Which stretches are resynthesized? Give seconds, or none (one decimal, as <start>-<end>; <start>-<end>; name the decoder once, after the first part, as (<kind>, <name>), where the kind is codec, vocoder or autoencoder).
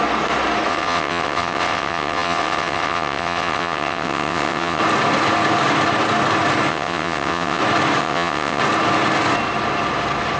0.7-4.8 (vocoder, WaveNeXt); 6.7-7.6; 8.0-8.6